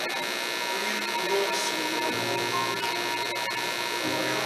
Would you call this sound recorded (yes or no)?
yes